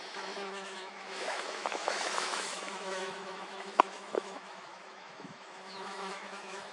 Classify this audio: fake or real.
fake